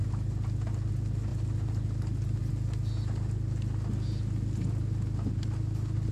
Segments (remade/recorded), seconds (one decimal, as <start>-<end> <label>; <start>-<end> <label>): 0.0-0.9 remade; 0.9-1.3 recorded; 1.3-2.5 remade; 2.5-6.1 recorded